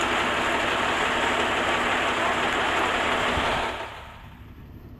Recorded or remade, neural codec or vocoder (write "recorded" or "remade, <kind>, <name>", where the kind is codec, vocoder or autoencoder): recorded